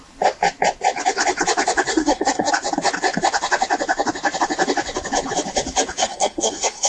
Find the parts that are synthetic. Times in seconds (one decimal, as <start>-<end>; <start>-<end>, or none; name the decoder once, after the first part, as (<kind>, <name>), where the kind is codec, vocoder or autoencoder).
1.9-2.5 (codec, SNAC); 6.0-6.9